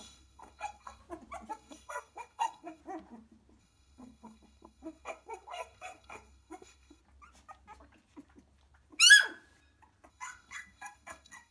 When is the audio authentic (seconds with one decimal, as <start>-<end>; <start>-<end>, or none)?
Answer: 1.0-1.5; 2.8-3.6; 7.0-10.1